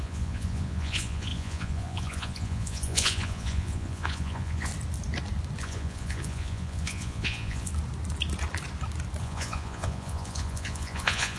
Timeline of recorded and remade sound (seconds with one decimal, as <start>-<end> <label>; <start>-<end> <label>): 0.0-4.7 remade; 4.7-5.6 recorded; 5.6-7.7 remade; 7.7-9.2 recorded; 9.2-11.4 remade

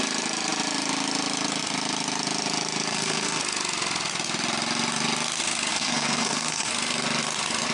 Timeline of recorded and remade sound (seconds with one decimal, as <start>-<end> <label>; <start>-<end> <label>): 0.0-2.9 recorded; 2.9-3.4 remade; 3.4-5.7 recorded; 5.7-6.7 remade; 6.7-7.7 recorded